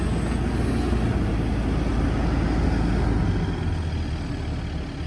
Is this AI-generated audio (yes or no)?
no